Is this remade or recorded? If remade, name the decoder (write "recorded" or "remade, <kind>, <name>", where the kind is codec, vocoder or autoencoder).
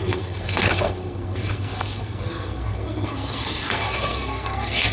remade, codec, SNAC